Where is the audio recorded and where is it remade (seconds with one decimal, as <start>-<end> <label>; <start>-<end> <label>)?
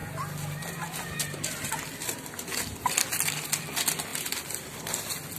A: 0.0-5.4 recorded